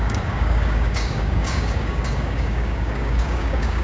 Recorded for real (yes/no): no